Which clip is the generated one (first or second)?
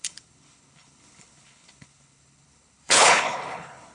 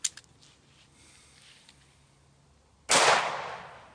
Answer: first